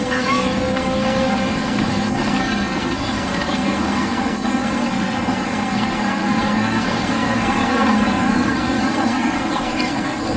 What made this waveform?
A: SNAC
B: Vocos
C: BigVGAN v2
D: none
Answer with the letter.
A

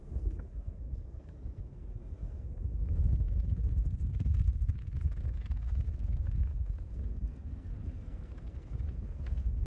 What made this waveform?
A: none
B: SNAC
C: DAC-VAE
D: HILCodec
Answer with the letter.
B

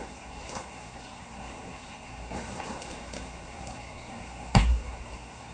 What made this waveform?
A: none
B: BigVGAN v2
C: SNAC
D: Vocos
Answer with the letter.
C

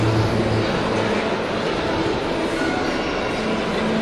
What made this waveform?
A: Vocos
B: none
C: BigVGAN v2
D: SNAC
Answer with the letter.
B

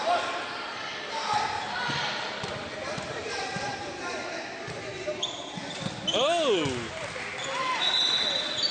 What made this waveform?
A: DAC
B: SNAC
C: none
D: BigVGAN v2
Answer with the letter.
C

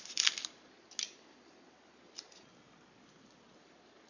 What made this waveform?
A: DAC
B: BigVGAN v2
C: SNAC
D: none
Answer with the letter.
D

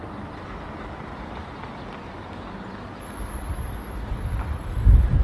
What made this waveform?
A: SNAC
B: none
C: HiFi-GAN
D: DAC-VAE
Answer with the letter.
B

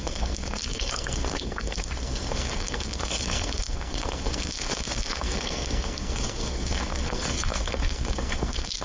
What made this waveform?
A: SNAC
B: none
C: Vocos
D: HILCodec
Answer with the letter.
A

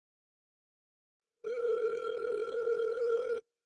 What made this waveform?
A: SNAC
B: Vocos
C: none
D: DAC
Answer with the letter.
A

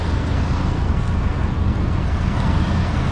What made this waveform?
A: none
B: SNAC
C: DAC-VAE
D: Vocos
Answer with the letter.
B